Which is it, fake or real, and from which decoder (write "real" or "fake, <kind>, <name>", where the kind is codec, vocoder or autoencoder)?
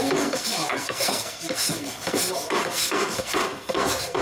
fake, codec, SNAC